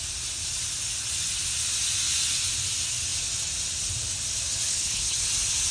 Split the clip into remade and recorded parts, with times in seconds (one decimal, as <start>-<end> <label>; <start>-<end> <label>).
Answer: 0.0-4.7 recorded; 4.7-5.2 remade; 5.2-5.7 recorded